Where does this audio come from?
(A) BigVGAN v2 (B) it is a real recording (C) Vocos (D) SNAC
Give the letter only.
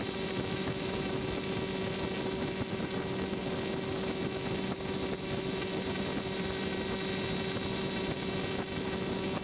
B